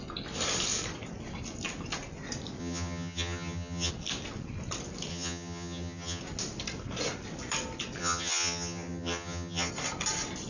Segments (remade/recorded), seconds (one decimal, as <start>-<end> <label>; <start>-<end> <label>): 0.0-2.6 recorded; 2.6-3.9 remade; 3.9-5.1 recorded; 5.1-6.2 remade; 6.2-8.0 recorded; 8.0-9.7 remade; 9.7-10.5 recorded